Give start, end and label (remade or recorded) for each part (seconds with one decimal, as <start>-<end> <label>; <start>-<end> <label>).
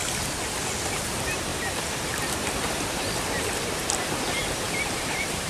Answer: 0.0-0.9 recorded; 0.9-1.5 remade; 1.5-3.3 recorded; 3.3-5.5 remade